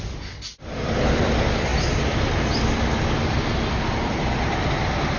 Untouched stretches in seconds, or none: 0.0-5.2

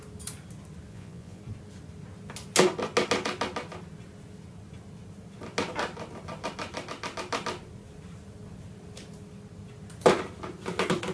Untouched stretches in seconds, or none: 0.0-0.9; 1.4-11.1

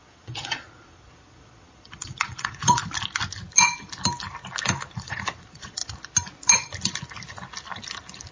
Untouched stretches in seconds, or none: 2.8-5.0; 5.8-8.3

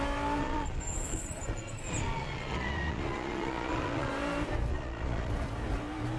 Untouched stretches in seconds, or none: 0.0-0.4; 4.1-4.7; 5.3-6.2

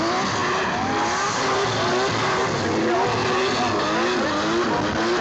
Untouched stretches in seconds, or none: 0.0-5.2